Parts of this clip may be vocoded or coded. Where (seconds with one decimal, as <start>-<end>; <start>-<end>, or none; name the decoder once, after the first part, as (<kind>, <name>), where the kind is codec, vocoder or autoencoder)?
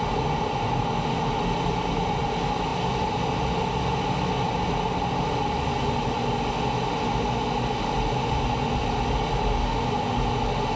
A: none